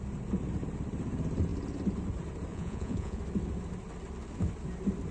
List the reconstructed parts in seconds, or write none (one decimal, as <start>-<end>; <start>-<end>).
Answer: 2.5-3.2